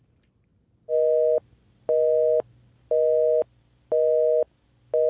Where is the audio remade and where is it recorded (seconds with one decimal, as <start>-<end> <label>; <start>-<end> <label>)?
0.0-5.1 recorded